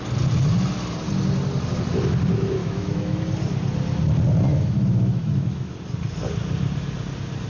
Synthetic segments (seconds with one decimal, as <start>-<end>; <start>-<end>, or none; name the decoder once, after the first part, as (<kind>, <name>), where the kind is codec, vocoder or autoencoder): 2.6-3.2 (autoencoder, DAC-VAE); 4.5-5.7

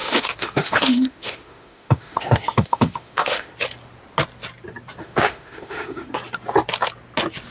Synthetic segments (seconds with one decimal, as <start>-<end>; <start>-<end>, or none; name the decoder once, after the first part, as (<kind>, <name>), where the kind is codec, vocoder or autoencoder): 0.0-3.5 (autoencoder, DAC-VAE); 5.0-6.1

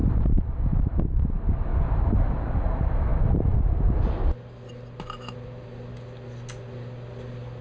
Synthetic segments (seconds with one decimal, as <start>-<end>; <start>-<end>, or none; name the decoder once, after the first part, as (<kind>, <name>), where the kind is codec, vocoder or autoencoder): none

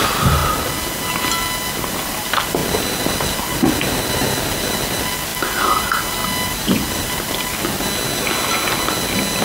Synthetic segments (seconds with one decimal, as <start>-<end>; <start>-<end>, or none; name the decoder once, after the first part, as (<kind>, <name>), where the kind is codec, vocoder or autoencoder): none